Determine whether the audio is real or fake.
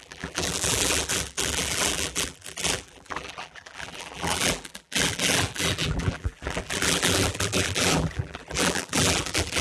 fake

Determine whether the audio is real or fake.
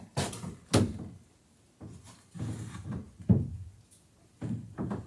real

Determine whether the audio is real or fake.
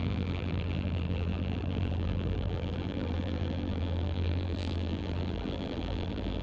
fake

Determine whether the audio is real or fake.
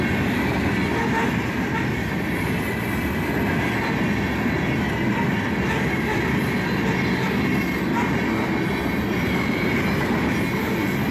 real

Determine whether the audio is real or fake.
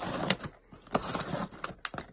real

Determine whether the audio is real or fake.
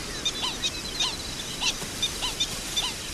real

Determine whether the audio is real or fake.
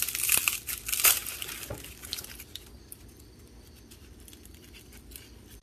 fake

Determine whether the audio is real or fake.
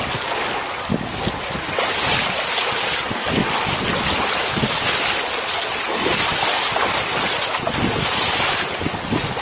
real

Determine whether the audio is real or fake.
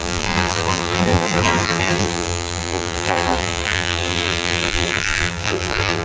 fake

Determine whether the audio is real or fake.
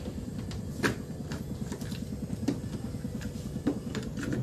real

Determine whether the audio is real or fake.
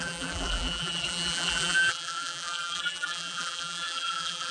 fake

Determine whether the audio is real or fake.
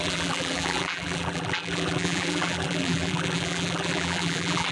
fake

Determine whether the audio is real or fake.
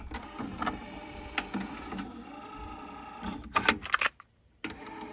real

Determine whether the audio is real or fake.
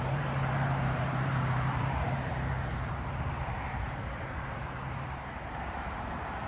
fake